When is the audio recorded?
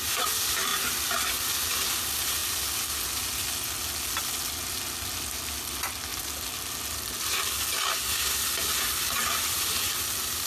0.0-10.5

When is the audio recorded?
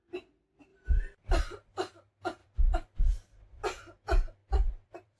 0.0-0.7; 1.4-2.4; 3.0-4.4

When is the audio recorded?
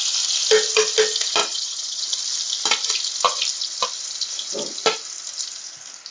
0.0-1.4; 2.0-6.1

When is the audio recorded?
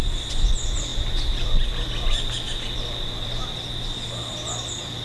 0.0-5.0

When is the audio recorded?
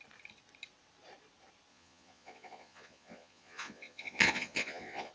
0.0-1.7